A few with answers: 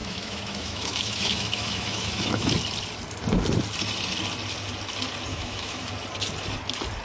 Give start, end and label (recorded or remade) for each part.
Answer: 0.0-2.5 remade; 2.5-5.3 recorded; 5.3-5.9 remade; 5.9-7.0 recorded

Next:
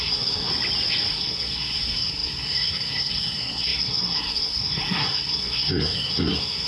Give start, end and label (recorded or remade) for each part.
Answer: 0.0-0.5 remade; 0.5-1.1 recorded; 1.1-6.7 remade

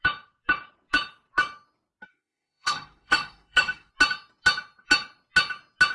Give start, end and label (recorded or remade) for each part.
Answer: 0.0-2.1 recorded; 2.1-3.9 remade; 3.9-5.9 recorded

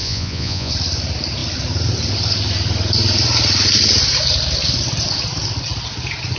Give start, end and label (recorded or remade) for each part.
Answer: 0.0-0.7 remade; 0.7-6.4 recorded

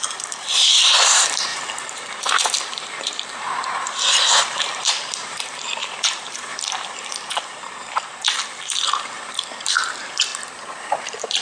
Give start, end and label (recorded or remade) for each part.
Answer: 0.0-10.3 remade; 10.3-11.0 recorded; 11.0-11.4 remade

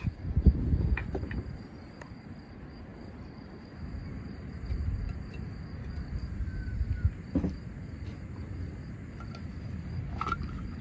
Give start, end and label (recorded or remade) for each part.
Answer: 0.0-10.8 recorded

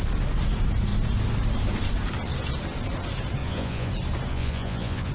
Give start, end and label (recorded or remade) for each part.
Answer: 0.0-3.4 recorded; 3.4-3.9 remade; 3.9-4.3 recorded; 4.3-5.1 remade